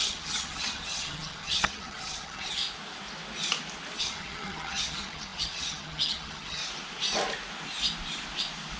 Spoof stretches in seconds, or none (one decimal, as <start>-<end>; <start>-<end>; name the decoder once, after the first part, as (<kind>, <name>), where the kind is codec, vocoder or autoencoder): 0.0-2.6 (vocoder, HiFi-GAN); 4.0-6.6